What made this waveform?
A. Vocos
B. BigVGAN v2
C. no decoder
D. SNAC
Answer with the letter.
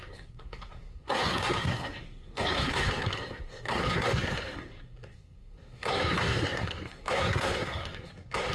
D